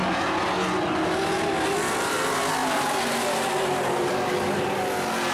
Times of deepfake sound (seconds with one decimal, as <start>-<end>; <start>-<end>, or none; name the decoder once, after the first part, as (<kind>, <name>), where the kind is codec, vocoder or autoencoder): none